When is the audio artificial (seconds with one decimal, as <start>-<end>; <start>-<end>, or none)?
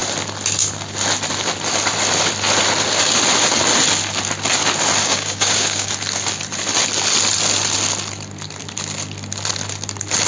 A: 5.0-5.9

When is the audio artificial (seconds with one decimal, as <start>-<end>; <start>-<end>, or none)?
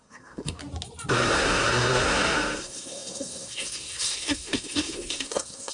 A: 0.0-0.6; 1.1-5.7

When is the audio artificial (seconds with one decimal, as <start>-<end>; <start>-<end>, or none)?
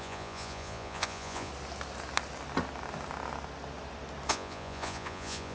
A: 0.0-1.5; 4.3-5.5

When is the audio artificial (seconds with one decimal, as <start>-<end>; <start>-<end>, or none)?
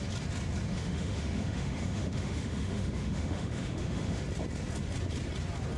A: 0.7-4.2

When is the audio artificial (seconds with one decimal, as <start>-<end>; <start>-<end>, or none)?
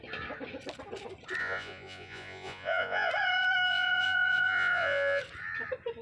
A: 1.4-3.1; 3.7-5.2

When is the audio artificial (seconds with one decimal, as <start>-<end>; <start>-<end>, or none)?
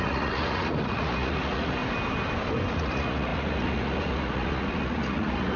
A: 0.0-1.8; 2.7-5.6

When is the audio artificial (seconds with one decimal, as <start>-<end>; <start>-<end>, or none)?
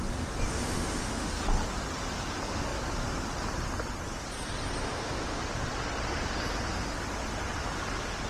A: 0.5-1.3; 4.8-5.4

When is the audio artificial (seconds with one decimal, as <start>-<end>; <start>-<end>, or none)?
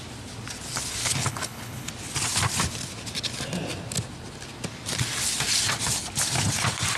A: 1.0-1.9